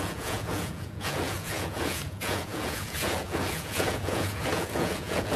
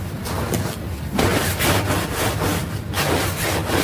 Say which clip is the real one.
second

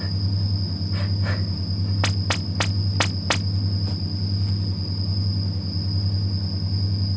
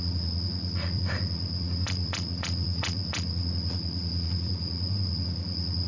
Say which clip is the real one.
first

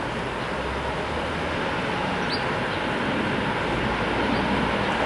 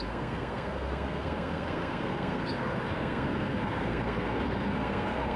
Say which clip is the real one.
first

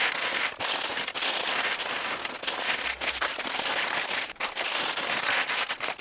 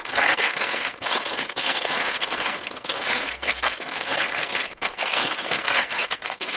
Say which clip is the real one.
first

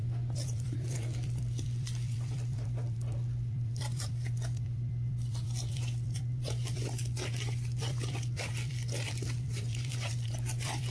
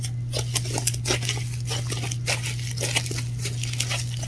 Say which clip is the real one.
second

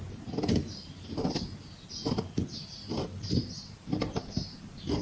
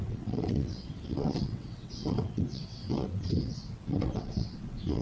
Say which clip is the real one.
first